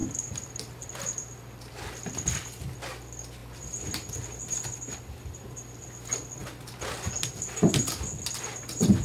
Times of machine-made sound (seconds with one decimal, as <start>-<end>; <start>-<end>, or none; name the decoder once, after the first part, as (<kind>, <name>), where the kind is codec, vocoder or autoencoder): 0.0-2.6 (vocoder, BigVGAN v2); 3.4-4.1